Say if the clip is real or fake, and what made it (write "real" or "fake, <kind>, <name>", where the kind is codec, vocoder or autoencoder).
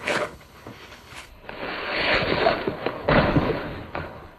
fake, codec, HILCodec